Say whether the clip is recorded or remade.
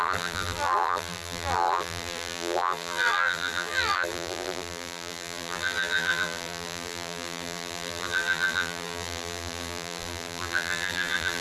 remade